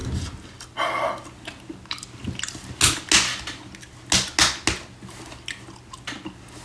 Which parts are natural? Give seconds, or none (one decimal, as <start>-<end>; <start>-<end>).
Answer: 0.0-6.6